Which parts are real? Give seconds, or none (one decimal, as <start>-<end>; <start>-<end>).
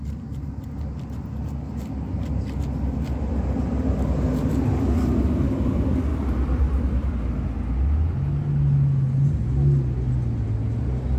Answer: 0.0-11.2